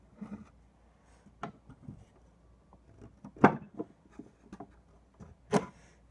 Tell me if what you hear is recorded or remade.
recorded